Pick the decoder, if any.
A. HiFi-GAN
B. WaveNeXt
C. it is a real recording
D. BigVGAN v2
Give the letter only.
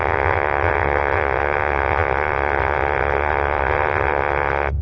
B